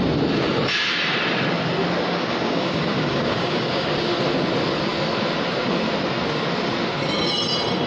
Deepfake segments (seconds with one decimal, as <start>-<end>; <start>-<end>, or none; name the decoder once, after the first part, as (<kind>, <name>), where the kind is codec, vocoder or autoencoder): 2.1-3.9 (codec, DAC)